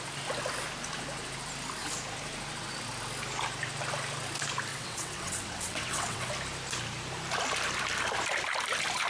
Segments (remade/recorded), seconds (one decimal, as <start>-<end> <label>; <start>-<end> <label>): 0.0-4.7 recorded; 4.7-6.3 remade; 6.3-9.1 recorded